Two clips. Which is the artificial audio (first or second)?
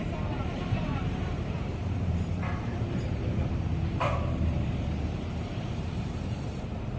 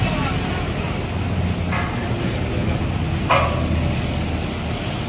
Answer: first